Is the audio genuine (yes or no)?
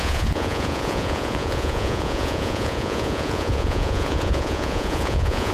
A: no